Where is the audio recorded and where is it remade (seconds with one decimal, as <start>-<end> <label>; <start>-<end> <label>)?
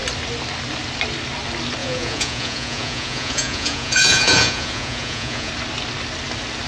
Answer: 0.0-1.8 recorded; 1.8-5.5 remade; 5.5-6.7 recorded